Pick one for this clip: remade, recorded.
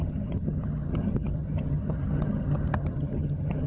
remade